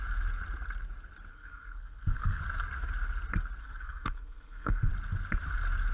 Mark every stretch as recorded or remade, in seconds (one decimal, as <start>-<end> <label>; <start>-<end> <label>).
0.0-1.3 recorded; 1.3-2.4 remade; 2.4-3.6 recorded; 3.6-4.9 remade; 4.9-5.9 recorded